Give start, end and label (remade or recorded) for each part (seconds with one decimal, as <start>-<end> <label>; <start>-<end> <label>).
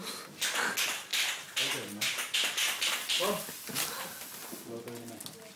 0.0-1.1 recorded; 1.1-2.8 remade; 2.8-5.6 recorded